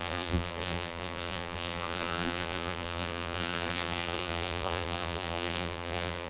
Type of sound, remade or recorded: remade